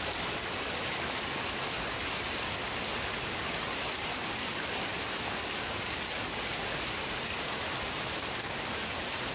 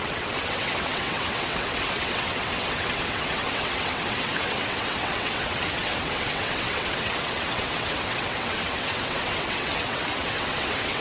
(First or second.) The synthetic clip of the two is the second